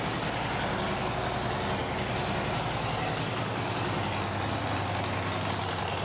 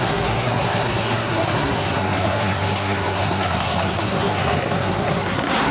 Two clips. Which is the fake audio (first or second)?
second